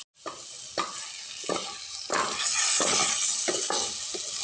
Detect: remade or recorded recorded